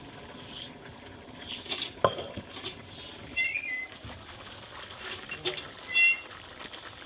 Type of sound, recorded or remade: recorded